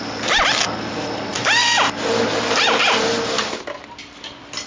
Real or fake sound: real